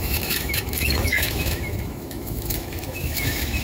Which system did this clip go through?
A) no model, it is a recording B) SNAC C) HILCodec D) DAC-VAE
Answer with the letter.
D